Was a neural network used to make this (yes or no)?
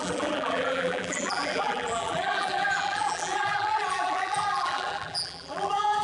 yes